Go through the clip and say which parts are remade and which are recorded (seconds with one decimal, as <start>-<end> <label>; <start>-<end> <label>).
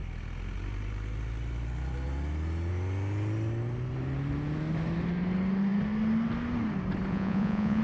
0.0-7.1 recorded; 7.1-7.8 remade